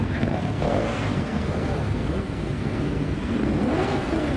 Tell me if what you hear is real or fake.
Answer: fake